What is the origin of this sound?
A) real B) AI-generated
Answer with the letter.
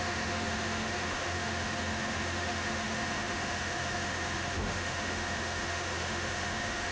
B